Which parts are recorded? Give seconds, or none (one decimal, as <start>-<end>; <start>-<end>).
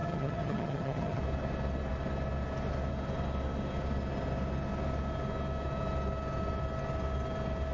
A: 1.2-7.7